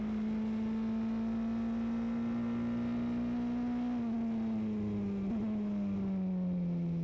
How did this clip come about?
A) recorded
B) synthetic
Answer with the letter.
A